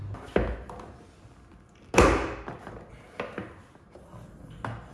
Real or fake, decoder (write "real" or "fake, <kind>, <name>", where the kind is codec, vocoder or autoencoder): real